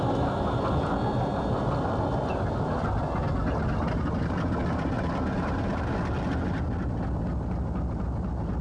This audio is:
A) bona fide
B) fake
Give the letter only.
A